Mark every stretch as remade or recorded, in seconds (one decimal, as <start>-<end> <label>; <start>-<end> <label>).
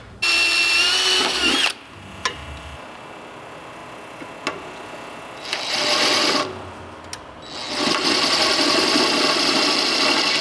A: 0.0-10.4 recorded